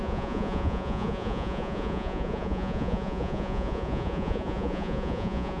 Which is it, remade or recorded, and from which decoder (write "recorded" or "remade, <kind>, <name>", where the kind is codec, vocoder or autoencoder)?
remade, vocoder, Vocos